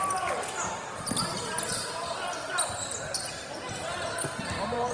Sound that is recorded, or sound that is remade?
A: recorded